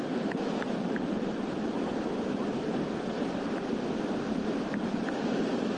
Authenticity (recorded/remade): remade